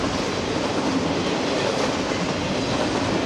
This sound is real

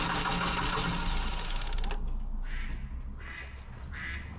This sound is real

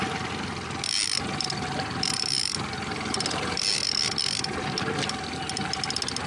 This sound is real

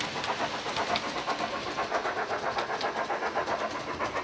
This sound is real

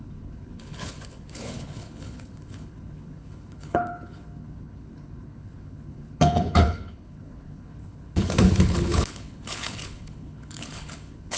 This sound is fake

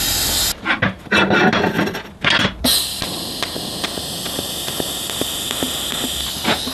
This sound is real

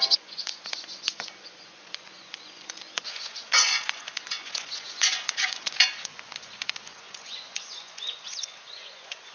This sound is fake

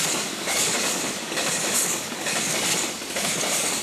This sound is fake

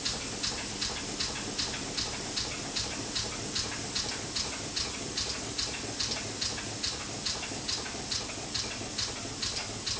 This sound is real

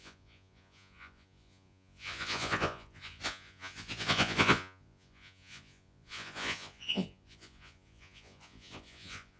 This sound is fake